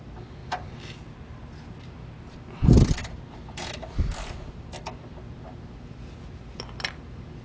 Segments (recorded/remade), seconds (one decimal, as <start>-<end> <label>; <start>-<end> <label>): 0.0-7.4 recorded